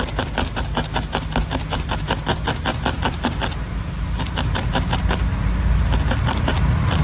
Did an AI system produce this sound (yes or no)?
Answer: no